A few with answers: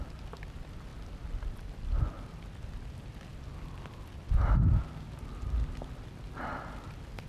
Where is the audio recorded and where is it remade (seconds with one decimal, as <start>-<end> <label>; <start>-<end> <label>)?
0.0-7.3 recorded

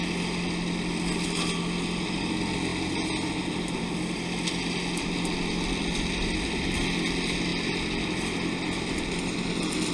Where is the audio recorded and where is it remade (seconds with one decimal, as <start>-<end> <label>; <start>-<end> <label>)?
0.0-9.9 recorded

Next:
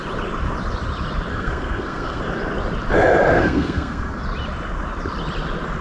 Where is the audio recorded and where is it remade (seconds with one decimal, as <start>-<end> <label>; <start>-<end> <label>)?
0.0-1.3 recorded; 1.3-2.2 remade; 2.2-3.3 recorded; 3.3-4.2 remade; 4.2-5.8 recorded

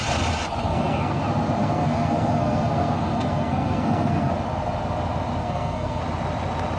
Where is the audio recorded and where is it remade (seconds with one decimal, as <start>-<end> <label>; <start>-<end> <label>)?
0.0-0.6 recorded; 0.6-1.2 remade; 1.2-1.6 recorded; 1.6-4.3 remade; 4.3-5.4 recorded; 5.4-6.0 remade; 6.0-6.8 recorded